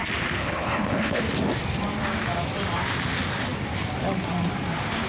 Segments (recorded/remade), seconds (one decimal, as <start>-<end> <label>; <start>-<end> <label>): 0.0-0.4 recorded; 0.4-1.2 remade; 1.2-5.1 recorded